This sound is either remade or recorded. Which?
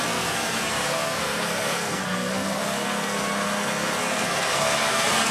remade